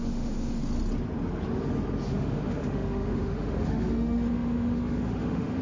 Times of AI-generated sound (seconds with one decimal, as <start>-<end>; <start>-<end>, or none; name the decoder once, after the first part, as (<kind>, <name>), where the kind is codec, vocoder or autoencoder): 0.0-0.6 (autoencoder, DAC-VAE); 2.1-5.6